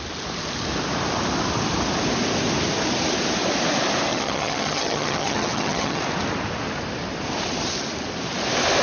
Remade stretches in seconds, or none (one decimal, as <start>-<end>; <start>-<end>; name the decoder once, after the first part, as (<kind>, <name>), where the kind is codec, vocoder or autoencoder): 4.1-6.0 (vocoder, HiFi-GAN)